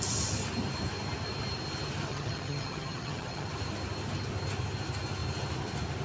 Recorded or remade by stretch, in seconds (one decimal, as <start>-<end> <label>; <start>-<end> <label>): 0.0-2.1 recorded; 2.1-3.5 remade; 3.5-6.0 recorded